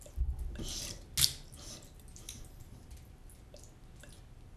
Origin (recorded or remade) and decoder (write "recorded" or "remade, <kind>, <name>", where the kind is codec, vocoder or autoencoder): recorded